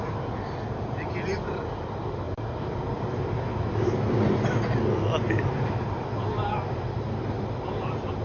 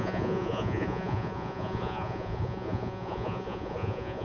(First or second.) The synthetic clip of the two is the second